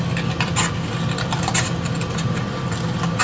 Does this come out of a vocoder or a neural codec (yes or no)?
no